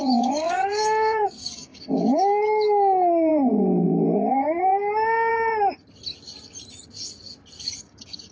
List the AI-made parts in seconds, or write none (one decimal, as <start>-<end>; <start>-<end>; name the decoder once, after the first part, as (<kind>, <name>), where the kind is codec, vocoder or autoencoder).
0.0-3.3 (codec, DAC); 4.3-5.3; 7.8-8.3